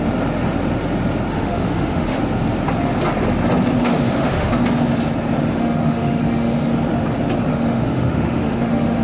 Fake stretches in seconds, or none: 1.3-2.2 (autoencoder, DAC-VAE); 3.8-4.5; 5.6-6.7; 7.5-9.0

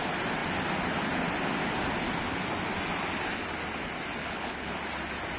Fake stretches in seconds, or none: 4.2-4.7 (codec, HILCodec)